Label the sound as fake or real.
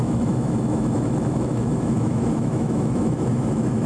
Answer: fake